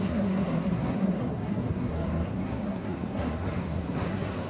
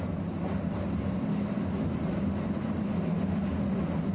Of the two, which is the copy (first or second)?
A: first